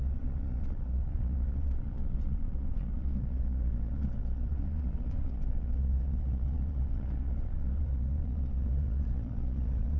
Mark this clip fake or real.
fake